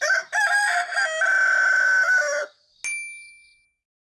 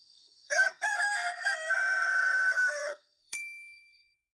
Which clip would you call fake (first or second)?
second